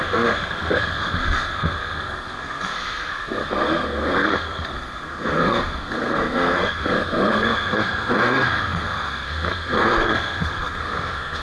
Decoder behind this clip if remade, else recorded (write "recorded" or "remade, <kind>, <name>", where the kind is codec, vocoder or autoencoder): remade, codec, SNAC